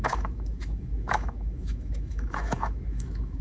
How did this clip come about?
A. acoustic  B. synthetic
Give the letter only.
B